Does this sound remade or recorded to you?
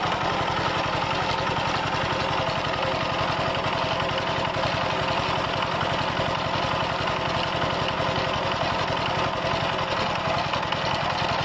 recorded